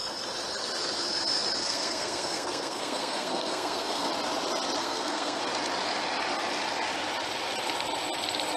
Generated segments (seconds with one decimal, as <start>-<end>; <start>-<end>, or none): 1.6-4.1; 4.8-5.4